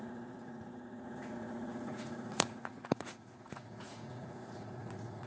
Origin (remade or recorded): remade